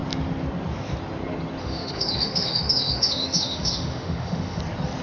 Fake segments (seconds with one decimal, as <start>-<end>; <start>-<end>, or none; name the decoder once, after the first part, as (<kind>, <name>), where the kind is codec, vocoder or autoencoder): 1.6-4.6 (autoencoder, DAC-VAE)